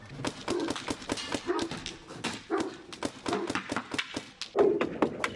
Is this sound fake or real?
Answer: real